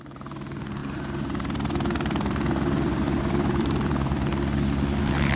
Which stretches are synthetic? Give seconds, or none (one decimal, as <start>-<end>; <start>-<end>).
0.0-4.3; 5.0-5.4